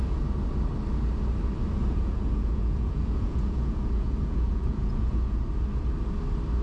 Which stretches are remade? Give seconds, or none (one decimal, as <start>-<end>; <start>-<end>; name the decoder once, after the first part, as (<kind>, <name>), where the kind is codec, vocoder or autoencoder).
1.8-5.4 (vocoder, Vocos)

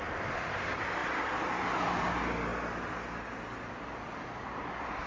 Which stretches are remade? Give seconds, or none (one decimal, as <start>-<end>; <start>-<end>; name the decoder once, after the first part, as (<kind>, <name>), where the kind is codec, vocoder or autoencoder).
1.0-2.1 (vocoder, BigVGAN v2)

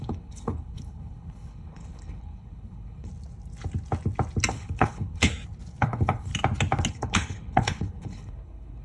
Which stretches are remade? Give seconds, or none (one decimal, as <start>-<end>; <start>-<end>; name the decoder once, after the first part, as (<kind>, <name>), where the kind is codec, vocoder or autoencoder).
0.0-3.1 (codec, HILCodec); 4.5-5.3; 5.8-6.3; 6.9-8.8

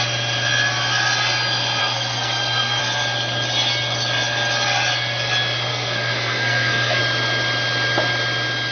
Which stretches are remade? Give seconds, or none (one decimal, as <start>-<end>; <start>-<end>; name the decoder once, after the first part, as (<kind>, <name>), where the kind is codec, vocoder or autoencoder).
1.8-2.8 (codec, SNAC); 5.7-7.0

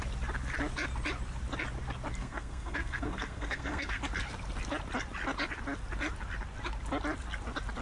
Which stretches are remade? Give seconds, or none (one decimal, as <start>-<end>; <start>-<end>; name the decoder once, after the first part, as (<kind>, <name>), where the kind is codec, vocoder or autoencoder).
2.2-4.0 (codec, SNAC)

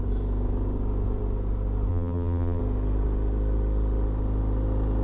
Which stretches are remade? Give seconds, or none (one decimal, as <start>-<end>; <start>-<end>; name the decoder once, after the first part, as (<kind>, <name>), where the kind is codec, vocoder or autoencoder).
1.9-2.6 (vocoder, BigVGAN v2)

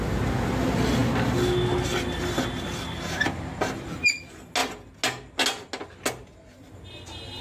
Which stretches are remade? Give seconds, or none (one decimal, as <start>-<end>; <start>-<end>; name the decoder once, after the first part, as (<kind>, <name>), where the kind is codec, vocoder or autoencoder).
none

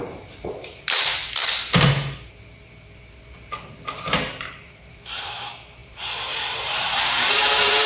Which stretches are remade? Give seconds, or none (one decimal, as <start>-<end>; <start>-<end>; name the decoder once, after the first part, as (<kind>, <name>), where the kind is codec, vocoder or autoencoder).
0.0-1.2 (vocoder, BigVGAN v2); 3.7-7.9